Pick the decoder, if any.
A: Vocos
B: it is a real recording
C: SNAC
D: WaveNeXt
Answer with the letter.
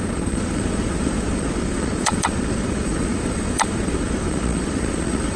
A